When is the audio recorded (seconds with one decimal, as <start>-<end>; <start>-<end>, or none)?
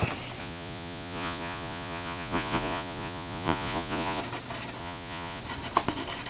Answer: 0.0-0.4; 4.2-4.8; 5.4-6.3